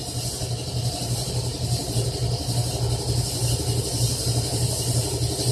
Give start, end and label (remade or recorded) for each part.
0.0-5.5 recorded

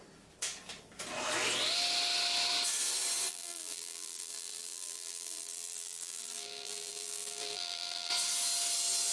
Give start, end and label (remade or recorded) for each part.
0.0-3.3 recorded; 3.3-8.1 remade; 8.1-9.1 recorded

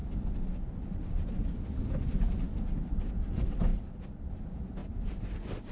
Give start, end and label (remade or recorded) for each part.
0.0-1.4 remade; 1.4-3.7 recorded; 3.7-4.3 remade; 4.3-4.8 recorded; 4.8-5.7 remade

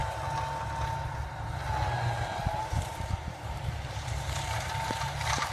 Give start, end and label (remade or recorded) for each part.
0.0-2.4 recorded; 2.4-4.7 remade; 4.7-5.5 recorded

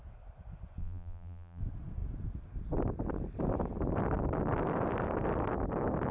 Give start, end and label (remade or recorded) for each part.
0.0-0.8 recorded; 0.8-1.6 remade; 1.6-6.1 recorded

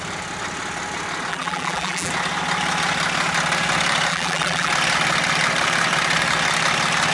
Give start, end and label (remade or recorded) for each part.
0.0-1.3 recorded; 1.3-2.1 remade; 2.1-4.1 recorded; 4.1-4.7 remade; 4.7-7.1 recorded